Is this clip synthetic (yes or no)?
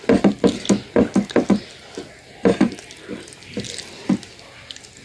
no